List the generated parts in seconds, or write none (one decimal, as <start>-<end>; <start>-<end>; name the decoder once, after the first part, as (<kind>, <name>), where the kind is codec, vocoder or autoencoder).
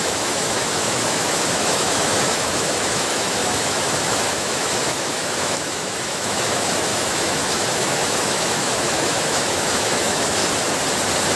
0.0-10.4 (autoencoder, DAC-VAE)